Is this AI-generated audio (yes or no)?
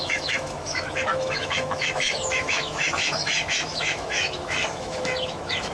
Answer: yes